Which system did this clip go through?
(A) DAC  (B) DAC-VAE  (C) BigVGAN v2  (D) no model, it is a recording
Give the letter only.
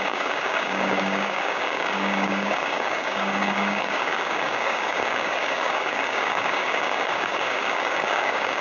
A